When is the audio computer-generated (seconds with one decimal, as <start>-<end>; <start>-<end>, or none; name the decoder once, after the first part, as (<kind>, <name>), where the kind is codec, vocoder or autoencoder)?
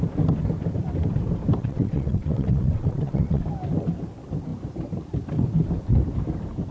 1.6-3.4 (vocoder, WaveNeXt)